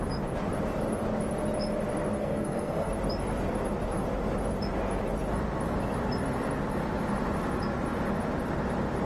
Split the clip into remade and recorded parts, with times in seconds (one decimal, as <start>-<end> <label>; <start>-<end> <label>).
0.0-2.2 recorded; 2.2-2.9 remade; 2.9-9.1 recorded